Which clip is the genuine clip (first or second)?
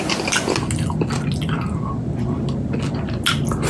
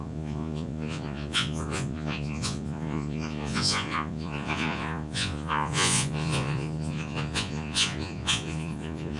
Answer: first